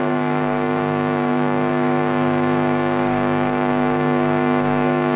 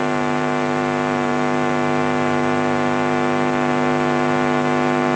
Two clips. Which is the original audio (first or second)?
second